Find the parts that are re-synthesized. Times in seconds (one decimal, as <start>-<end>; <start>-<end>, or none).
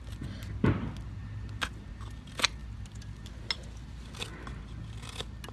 none